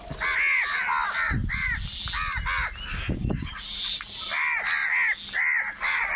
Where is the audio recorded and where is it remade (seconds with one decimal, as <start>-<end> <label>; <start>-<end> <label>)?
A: 0.0-2.9 recorded; 2.9-3.5 remade; 3.5-6.2 recorded